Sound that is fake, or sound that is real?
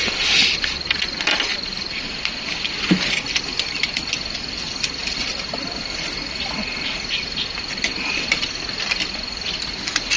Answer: fake